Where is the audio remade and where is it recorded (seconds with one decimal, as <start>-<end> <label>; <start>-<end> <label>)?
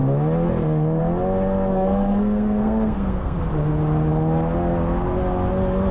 0.0-1.7 recorded; 1.7-3.4 remade; 3.4-5.9 recorded